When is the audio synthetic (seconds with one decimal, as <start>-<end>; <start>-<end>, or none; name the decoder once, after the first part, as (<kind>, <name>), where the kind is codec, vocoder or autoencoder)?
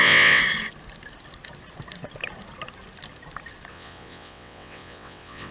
0.0-0.4 (vocoder, WaveNeXt); 3.7-5.5